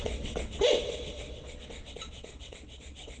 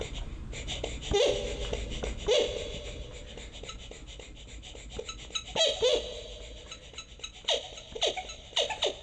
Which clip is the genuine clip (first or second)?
second